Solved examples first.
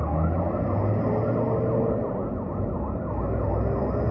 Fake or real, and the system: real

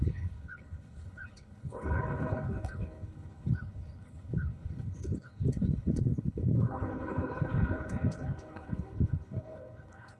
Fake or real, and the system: fake, codec, HILCodec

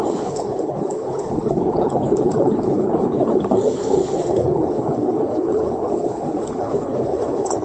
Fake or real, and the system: fake, codec, HILCodec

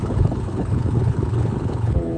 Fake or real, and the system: fake, codec, HILCodec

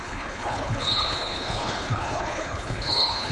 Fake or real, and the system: fake, codec, HILCodec